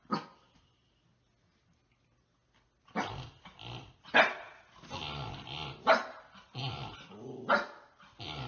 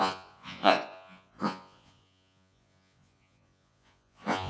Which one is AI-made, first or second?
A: second